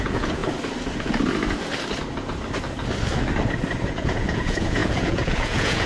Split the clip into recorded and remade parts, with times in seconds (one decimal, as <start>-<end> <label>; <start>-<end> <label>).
0.0-0.4 remade; 0.4-3.9 recorded; 3.9-5.9 remade